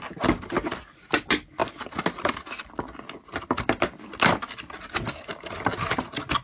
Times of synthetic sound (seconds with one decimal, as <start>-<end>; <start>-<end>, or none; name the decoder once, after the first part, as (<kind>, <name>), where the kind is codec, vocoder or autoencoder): none